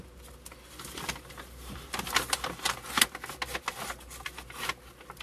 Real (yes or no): yes